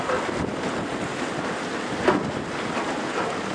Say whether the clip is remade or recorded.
recorded